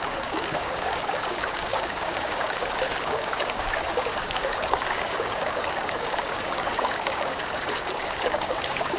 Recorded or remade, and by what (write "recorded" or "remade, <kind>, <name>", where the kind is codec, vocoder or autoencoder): remade, codec, DAC